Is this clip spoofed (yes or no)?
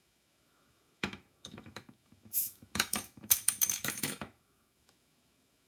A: yes